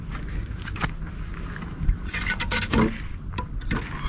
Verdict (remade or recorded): recorded